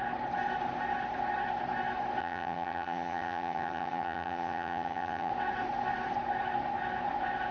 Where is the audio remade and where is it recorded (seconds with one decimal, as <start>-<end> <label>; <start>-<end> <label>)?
0.0-2.2 recorded; 2.2-5.3 remade; 5.3-7.5 recorded